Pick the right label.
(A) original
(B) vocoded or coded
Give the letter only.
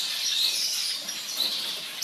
A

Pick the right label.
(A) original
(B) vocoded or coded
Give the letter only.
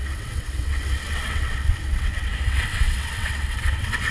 B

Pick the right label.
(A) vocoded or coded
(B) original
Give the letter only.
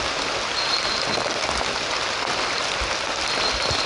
B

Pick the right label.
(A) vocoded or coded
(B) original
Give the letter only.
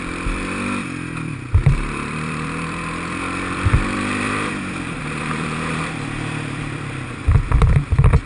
A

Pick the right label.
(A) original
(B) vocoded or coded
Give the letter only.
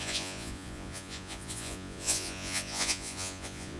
B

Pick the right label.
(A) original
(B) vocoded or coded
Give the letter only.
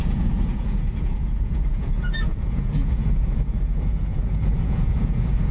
B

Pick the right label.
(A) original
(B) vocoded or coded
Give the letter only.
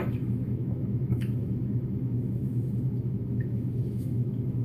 B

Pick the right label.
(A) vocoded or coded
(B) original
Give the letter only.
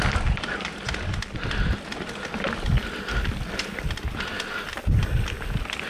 B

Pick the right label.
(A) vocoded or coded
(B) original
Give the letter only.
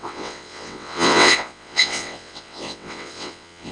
A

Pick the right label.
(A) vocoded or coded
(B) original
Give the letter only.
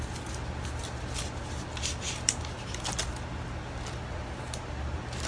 B